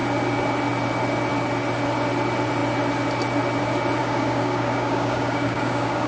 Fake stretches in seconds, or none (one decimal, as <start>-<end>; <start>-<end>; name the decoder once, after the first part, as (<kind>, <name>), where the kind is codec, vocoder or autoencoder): 4.0-6.1 (codec, DAC)